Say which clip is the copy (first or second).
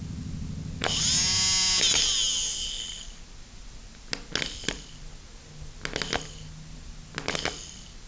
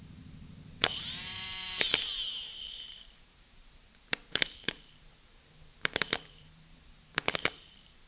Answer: second